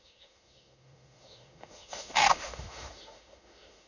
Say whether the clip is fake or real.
fake